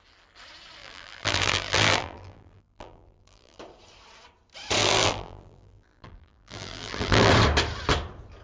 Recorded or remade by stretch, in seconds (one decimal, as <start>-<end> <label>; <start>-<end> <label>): 0.0-0.8 recorded; 0.8-3.6 remade; 3.6-4.8 recorded; 4.8-7.3 remade; 7.3-8.4 recorded

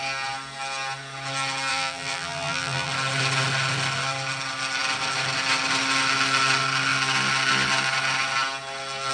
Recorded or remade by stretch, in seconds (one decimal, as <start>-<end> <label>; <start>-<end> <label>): 0.0-1.7 recorded; 1.7-2.9 remade; 2.9-9.1 recorded

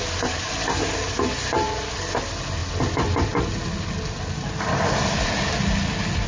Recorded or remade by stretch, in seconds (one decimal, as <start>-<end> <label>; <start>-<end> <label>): 0.0-6.3 recorded